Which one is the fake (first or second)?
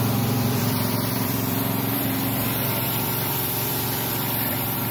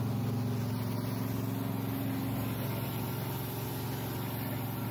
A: first